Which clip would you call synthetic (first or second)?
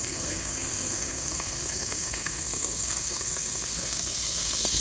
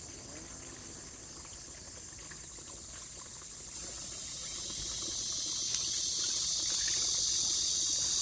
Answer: first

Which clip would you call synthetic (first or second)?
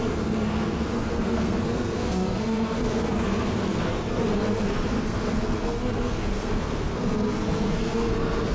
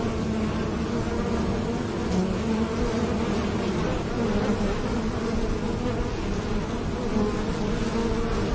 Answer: first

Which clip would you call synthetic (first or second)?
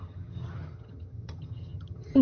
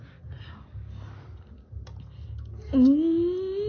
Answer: first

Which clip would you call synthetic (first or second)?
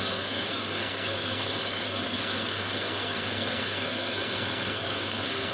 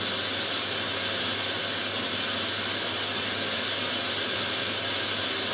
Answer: first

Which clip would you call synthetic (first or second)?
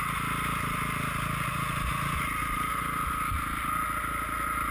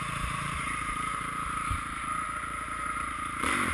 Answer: second